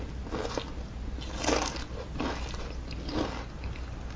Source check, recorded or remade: recorded